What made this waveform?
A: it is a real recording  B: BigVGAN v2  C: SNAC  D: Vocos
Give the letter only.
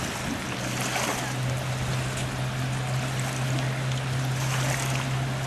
A